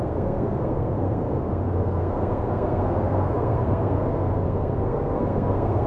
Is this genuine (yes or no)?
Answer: no